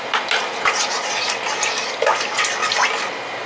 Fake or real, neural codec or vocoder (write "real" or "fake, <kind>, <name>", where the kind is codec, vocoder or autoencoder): real